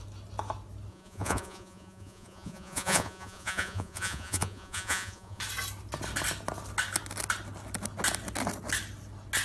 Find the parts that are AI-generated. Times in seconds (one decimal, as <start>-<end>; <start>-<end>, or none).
0.9-5.4